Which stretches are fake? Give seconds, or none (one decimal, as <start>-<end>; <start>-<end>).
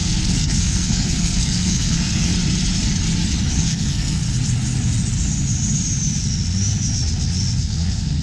0.0-2.3; 3.5-4.2; 7.6-8.2